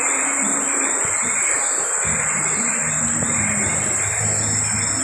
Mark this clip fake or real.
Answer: real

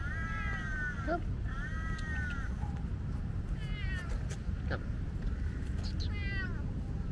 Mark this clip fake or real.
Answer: real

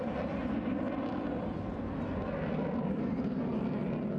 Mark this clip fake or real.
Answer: real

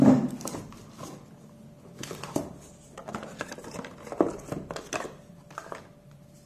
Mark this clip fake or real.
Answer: real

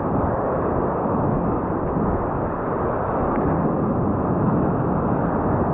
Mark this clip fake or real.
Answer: real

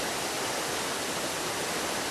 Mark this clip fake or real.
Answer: real